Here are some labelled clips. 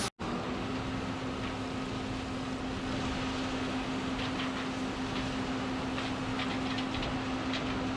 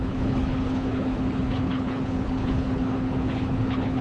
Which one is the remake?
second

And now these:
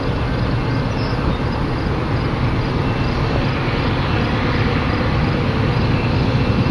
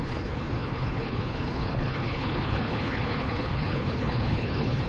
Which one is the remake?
second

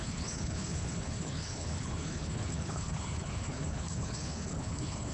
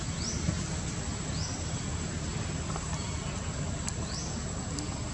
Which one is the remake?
first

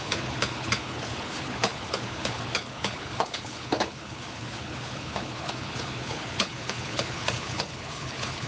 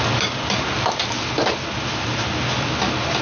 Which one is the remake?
first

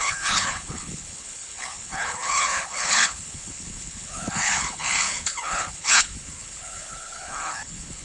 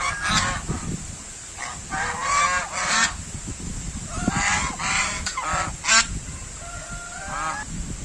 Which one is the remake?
first